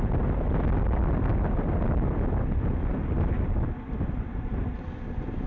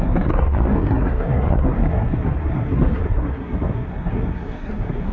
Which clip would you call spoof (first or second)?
second